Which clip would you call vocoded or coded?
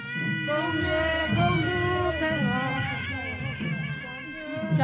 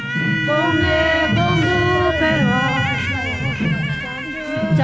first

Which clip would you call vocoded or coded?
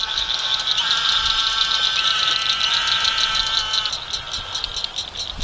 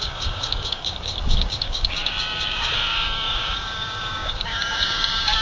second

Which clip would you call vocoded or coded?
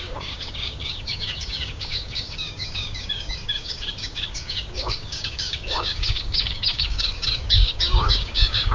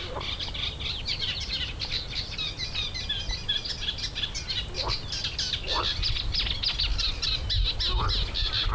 first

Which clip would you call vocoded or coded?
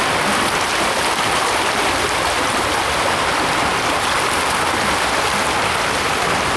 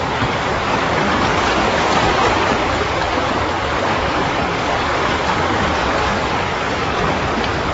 second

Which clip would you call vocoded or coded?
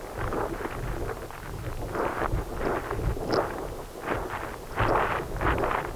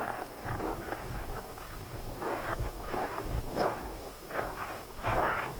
second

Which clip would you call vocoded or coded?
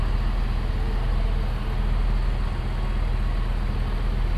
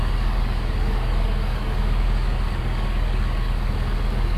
second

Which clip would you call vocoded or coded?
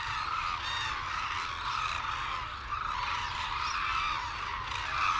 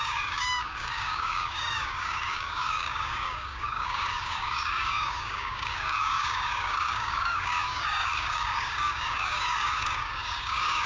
second